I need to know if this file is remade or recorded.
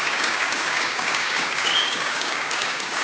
remade